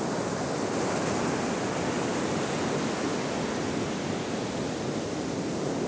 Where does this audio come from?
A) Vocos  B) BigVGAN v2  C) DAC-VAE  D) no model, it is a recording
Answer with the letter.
D